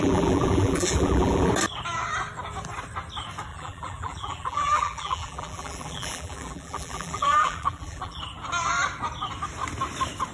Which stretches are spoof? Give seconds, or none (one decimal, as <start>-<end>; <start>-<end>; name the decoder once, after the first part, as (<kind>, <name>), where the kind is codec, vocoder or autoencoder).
0.0-1.5 (vocoder, BigVGAN v2); 3.5-8.2